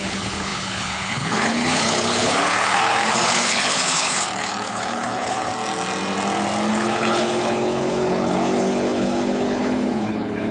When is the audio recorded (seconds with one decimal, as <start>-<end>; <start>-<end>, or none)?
5.5-6.7